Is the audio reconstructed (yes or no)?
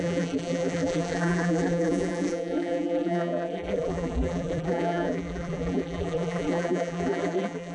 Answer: yes